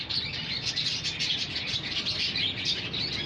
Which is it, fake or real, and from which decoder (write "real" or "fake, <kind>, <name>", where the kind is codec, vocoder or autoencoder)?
real